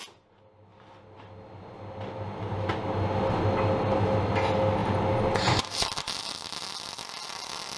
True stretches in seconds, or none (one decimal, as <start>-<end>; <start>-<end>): 0.0-7.8